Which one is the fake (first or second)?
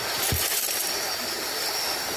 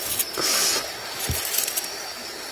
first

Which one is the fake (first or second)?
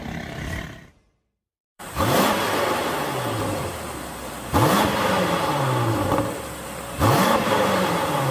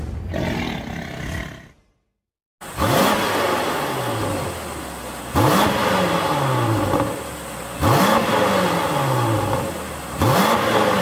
first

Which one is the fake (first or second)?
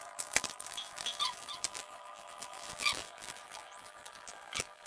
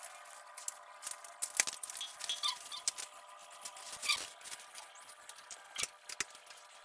first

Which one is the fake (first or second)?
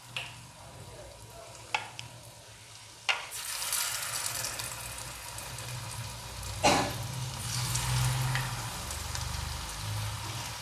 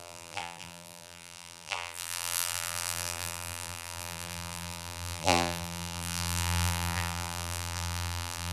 second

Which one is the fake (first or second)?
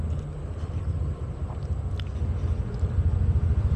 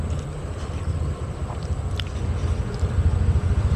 second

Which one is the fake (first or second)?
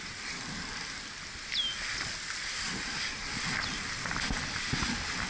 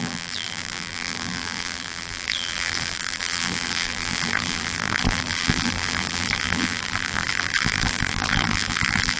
second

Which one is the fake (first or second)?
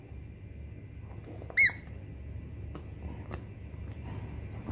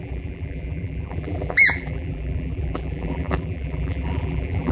second